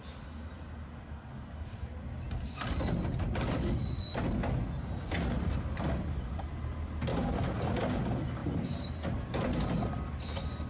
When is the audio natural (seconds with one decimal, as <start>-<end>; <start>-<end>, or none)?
0.0-10.7